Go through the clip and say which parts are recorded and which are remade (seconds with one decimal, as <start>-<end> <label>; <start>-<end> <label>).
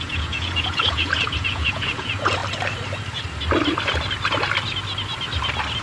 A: 0.0-2.4 remade; 2.4-5.8 recorded